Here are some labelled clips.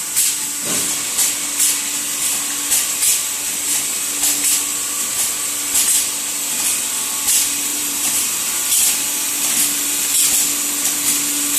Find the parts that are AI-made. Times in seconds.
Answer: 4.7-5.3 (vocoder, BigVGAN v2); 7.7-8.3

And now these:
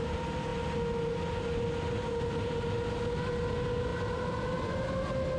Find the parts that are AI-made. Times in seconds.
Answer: none

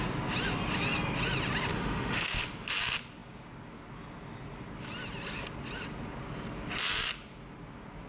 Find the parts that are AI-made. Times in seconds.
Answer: 1.7-2.4 (autoencoder, DAC-VAE)